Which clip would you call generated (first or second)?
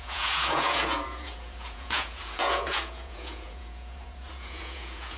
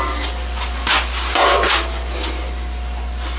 first